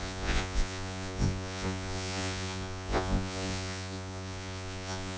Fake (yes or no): yes